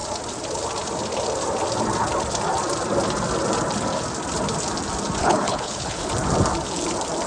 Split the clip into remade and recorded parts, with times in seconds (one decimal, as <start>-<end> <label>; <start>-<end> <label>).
0.0-5.2 recorded; 5.2-6.1 remade; 6.1-7.3 recorded